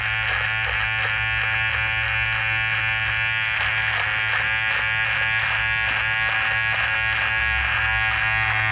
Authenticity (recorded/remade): recorded